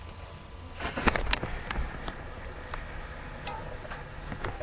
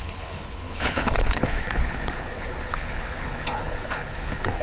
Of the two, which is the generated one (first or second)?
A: second